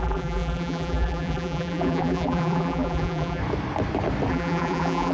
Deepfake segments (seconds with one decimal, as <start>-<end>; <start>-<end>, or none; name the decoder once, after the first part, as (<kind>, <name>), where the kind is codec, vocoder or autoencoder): 0.0-3.4 (vocoder, BigVGAN v2); 4.3-5.1